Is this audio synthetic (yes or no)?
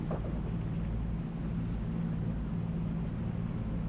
no